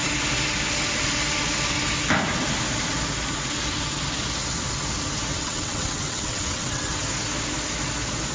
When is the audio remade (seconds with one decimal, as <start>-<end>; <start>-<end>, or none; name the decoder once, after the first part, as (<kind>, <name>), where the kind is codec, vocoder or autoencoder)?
5.3-6.9 (vocoder, WaveNeXt)

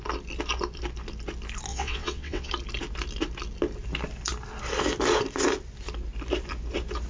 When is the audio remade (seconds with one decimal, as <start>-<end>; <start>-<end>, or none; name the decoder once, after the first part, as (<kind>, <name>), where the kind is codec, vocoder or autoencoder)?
1.7-2.5 (vocoder, WaveNeXt)

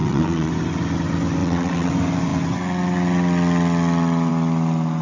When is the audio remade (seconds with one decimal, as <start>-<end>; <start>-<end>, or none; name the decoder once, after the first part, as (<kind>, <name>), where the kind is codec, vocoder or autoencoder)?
0.0-0.5 (vocoder, WaveNeXt); 1.4-1.9

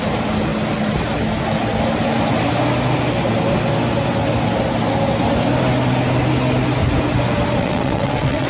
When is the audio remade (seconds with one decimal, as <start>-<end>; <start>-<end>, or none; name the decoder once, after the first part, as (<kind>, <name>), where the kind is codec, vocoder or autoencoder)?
7.6-8.5 (vocoder, WaveNeXt)

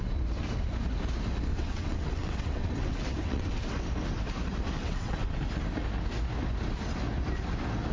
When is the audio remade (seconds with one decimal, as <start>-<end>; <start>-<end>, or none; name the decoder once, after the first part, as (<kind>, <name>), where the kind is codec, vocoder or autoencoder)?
1.5-3.8 (vocoder, WaveNeXt); 4.8-5.4

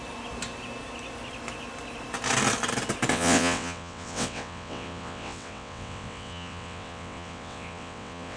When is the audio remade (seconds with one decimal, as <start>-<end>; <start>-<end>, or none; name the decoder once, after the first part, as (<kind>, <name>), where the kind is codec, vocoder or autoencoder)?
3.1-8.4 (vocoder, WaveNeXt)

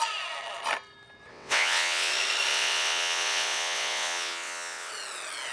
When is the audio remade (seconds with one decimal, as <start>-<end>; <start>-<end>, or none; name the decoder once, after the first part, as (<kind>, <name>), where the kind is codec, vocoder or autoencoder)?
1.3-2.1 (vocoder, WaveNeXt); 2.5-4.9